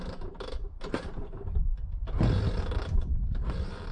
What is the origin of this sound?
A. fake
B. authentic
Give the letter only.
A